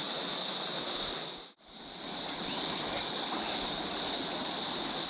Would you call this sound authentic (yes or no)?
yes